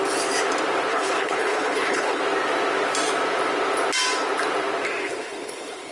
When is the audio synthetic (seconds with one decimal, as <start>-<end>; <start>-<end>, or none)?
0.9-2.2; 5.0-5.9